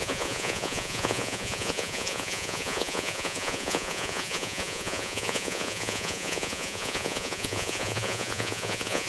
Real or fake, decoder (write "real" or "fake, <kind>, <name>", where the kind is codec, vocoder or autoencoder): fake, vocoder, Vocos